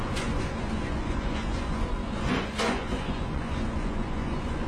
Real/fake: fake